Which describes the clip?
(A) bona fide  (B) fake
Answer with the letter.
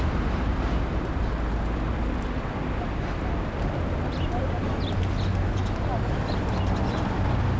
A